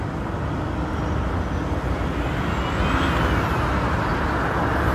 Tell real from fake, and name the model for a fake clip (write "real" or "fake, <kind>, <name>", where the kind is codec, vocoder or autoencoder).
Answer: real